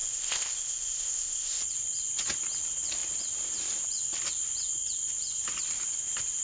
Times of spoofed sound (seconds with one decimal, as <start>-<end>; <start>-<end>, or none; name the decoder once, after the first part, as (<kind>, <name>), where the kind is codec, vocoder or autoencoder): 0.0-1.6 (codec, ZipCodec)